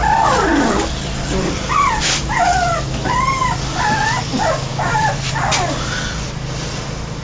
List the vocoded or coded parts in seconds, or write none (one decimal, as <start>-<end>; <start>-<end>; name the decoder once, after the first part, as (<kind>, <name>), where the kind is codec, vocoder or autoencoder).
0.5-2.2 (vocoder, BigVGAN v2); 3.4-4.2; 4.7-5.3